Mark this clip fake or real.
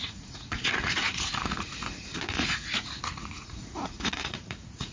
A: fake